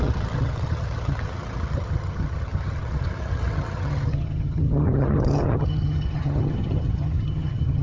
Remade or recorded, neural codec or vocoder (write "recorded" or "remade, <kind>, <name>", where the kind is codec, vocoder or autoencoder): remade, vocoder, HiFi-GAN